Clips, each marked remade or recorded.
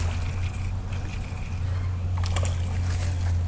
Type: recorded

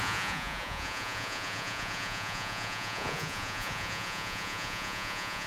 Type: remade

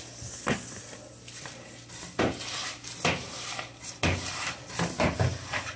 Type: recorded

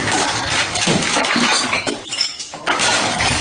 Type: remade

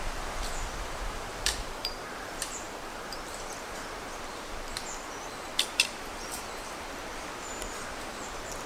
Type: remade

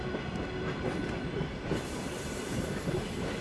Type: recorded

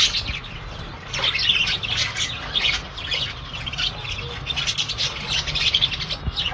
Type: recorded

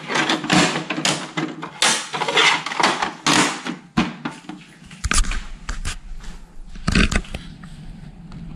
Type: recorded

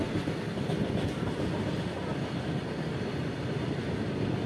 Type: recorded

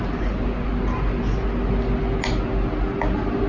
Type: recorded